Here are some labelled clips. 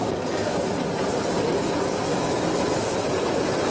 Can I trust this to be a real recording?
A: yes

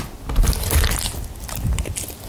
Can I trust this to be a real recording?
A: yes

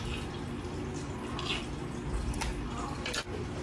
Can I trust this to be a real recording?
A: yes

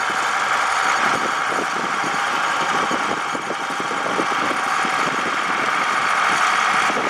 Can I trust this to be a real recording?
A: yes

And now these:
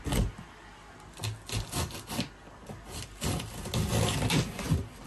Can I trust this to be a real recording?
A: yes